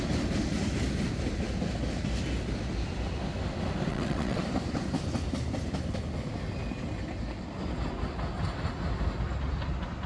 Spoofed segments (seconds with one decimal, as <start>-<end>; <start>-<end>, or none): 3.9-4.4